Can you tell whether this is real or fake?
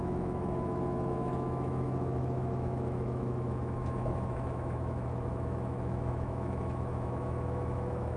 fake